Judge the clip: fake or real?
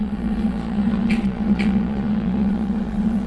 fake